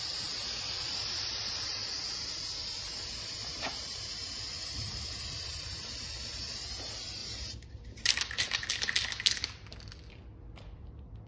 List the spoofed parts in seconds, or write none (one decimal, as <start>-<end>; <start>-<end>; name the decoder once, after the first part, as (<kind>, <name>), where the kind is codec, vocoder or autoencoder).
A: 3.5-4.4 (vocoder, BigVGAN v2); 7.2-8.7

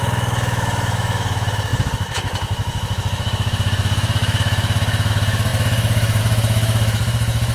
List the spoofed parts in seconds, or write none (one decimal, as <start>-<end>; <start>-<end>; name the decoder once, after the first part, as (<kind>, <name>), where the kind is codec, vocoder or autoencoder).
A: 0.0-7.5 (autoencoder, DAC-VAE)